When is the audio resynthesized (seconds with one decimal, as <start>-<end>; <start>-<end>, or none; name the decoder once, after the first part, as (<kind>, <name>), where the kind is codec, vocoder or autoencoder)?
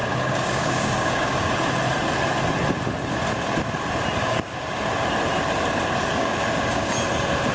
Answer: 0.0-1.5 (codec, DAC); 4.2-4.8; 6.1-6.9